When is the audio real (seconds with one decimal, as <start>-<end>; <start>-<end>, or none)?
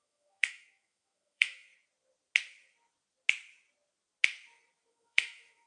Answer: 1.7-4.9